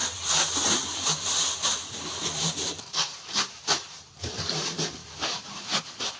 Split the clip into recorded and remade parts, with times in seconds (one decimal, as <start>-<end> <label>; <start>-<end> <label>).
0.0-6.2 remade